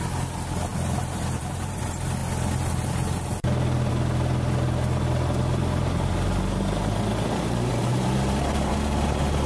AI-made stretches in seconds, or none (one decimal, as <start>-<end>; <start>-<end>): 0.7-1.8; 7.7-9.5